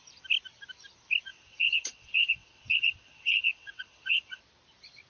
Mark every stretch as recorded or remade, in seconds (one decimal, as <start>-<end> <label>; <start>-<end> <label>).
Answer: 0.0-1.3 recorded; 1.3-4.4 remade; 4.4-5.1 recorded